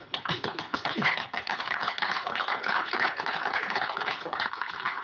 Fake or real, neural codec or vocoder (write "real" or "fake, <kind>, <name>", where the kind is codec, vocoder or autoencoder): fake, codec, HILCodec